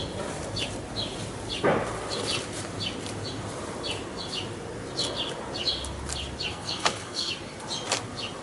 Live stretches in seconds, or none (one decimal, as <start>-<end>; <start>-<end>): 0.0-6.5; 7.3-8.4